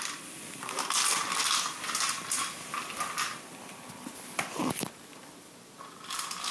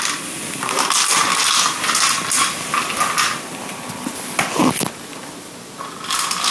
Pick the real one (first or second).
second